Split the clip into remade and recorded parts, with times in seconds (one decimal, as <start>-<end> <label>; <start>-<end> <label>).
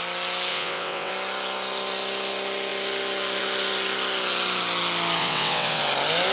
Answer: 0.0-0.5 recorded; 0.5-1.1 remade; 1.1-5.2 recorded; 5.2-5.8 remade; 5.8-6.3 recorded